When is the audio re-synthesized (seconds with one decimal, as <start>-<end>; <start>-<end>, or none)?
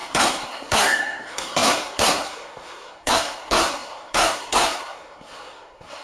0.0-6.0